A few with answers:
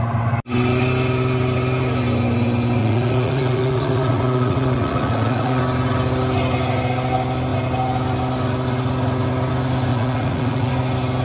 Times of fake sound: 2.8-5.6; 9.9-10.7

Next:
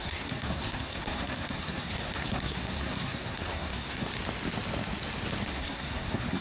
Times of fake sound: 0.0-4.1; 5.5-6.4